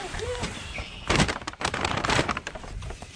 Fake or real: fake